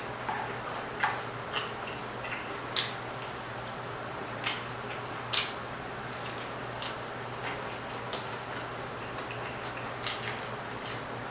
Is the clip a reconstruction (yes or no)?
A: no